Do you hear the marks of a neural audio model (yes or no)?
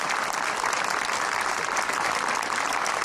yes